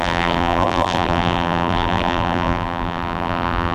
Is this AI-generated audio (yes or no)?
yes